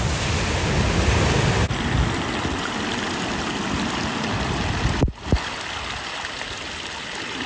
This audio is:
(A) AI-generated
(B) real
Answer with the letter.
B